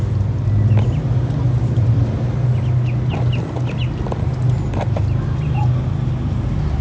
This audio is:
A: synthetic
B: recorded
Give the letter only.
B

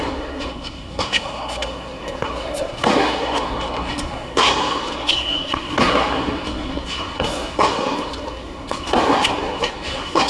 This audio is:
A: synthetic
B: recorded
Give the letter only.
A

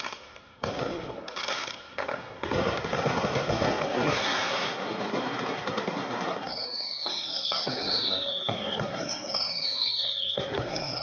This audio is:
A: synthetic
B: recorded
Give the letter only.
A